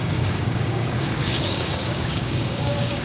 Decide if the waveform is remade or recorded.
remade